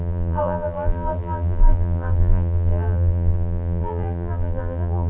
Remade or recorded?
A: remade